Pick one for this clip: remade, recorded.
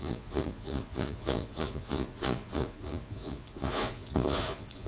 remade